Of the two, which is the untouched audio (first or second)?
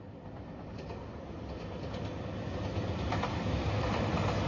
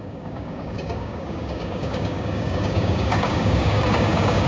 first